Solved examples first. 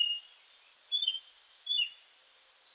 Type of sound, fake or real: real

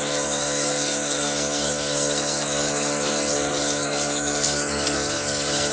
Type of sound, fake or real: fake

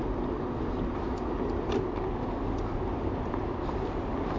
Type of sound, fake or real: real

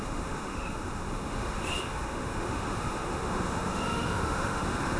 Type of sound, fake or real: fake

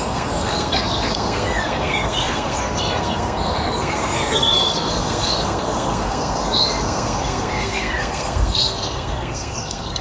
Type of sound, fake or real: fake